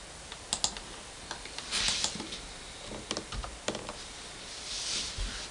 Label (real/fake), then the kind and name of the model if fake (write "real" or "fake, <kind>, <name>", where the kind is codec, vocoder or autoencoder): real